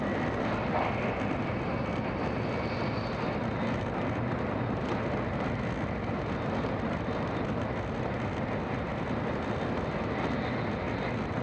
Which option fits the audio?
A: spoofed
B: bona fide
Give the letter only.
B